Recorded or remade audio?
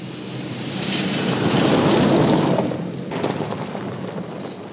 recorded